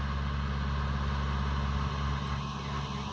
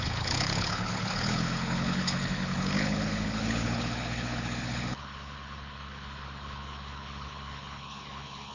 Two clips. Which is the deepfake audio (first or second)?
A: second